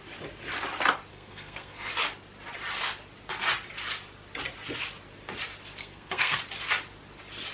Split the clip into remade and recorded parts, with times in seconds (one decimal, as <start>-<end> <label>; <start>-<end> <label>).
0.0-1.1 recorded; 1.1-1.9 remade; 1.9-5.8 recorded; 5.8-6.4 remade; 6.4-7.5 recorded